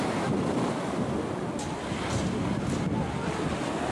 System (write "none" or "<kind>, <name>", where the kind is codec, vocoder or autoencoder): none